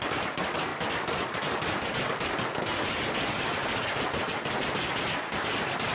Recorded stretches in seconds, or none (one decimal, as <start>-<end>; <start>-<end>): 0.0-5.9